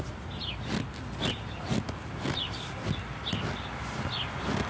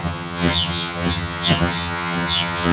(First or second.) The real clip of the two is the first